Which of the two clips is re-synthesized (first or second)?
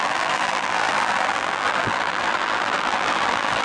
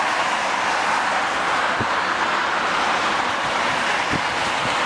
first